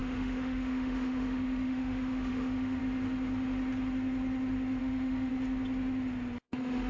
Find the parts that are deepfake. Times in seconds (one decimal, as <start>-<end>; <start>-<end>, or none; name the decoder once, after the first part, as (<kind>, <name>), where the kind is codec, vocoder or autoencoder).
0.0-2.8 (autoencoder, DAC-VAE); 4.8-5.3; 6.4-6.9